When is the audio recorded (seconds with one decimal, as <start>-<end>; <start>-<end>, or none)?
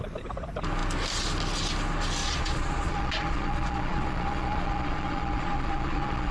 0.0-2.2